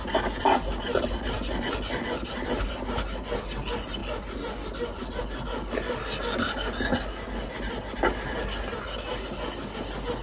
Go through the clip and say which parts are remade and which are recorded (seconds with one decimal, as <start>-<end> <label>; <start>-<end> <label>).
0.0-10.2 recorded

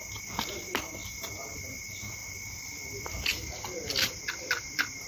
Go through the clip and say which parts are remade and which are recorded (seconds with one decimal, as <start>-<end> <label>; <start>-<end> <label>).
0.0-1.0 remade; 1.0-1.6 recorded; 1.6-5.1 remade

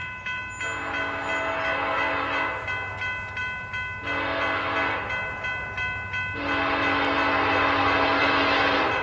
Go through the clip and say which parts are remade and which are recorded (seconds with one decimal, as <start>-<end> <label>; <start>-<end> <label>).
0.0-9.0 recorded